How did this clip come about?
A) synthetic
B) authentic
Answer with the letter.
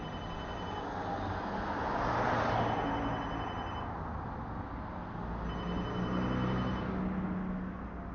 B